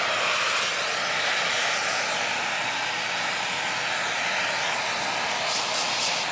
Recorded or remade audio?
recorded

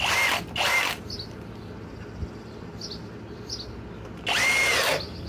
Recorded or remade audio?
recorded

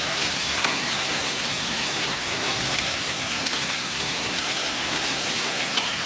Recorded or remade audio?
remade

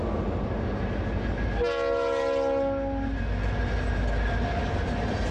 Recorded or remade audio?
recorded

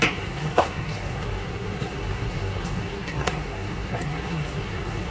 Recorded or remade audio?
remade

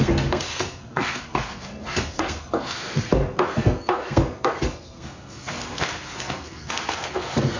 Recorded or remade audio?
remade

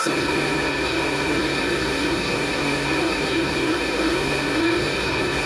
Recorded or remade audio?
remade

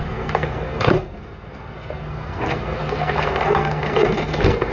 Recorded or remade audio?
remade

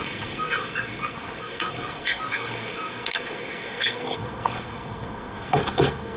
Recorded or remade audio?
remade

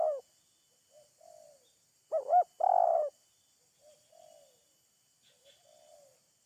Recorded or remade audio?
recorded